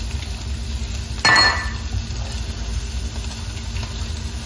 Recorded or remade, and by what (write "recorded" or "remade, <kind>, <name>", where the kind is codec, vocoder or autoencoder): recorded